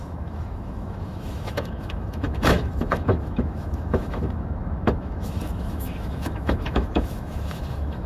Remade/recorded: remade